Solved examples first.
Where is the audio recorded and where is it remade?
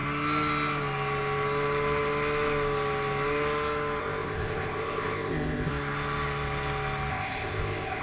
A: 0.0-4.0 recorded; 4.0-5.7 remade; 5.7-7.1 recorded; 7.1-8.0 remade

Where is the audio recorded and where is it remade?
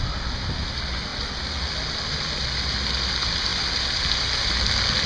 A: 0.0-5.1 recorded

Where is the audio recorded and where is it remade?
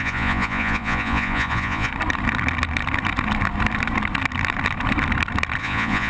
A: 0.0-1.9 remade; 1.9-5.6 recorded; 5.6-6.1 remade